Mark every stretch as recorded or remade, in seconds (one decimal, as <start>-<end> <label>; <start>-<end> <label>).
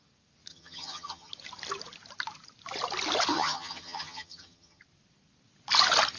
0.0-0.5 recorded; 0.5-1.3 remade; 1.3-3.3 recorded; 3.3-4.8 remade; 4.8-6.2 recorded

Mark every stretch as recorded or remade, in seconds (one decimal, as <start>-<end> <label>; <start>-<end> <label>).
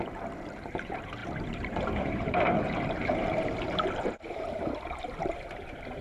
0.0-6.0 remade